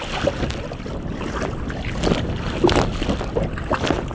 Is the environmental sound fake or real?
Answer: real